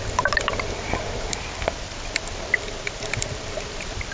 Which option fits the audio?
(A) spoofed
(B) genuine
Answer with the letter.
B